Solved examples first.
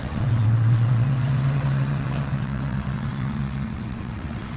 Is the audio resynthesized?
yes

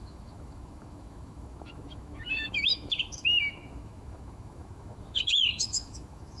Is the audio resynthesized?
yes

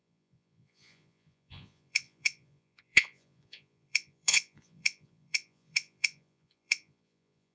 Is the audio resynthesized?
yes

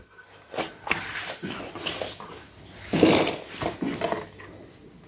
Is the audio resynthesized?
no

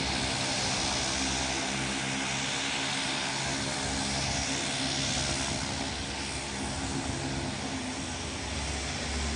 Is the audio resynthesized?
no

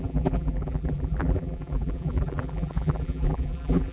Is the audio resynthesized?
yes